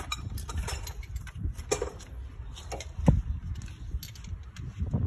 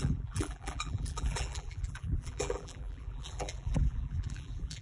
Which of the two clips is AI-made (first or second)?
second